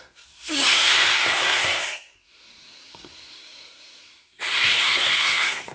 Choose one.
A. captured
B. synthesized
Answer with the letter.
B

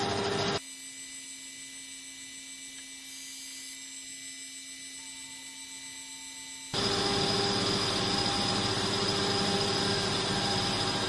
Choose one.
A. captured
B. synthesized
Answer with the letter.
A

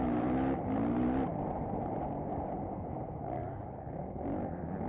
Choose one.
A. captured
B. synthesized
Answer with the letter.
B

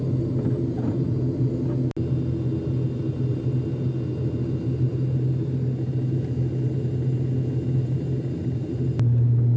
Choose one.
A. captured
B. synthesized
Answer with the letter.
A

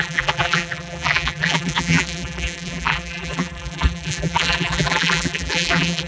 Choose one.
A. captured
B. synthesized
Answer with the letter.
B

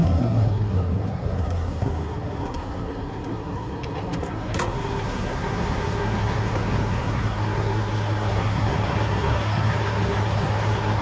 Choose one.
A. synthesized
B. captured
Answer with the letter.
A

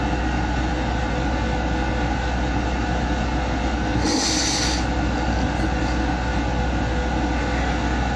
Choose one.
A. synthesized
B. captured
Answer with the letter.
B